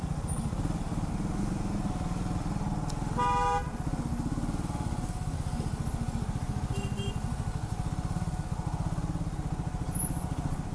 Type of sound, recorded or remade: recorded